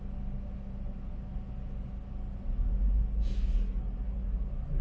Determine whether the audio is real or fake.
real